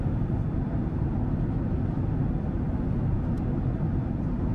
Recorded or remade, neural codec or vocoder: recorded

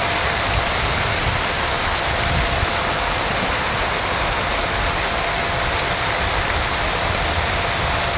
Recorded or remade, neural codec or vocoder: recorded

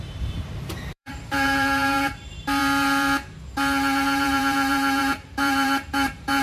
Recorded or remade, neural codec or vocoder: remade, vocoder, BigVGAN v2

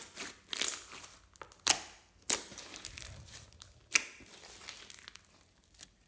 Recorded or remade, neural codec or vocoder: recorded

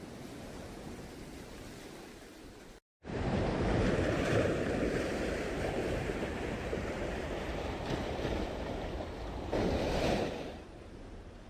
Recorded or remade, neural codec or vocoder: remade, vocoder, BigVGAN v2